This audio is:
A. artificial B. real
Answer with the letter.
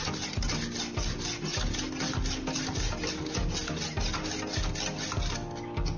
B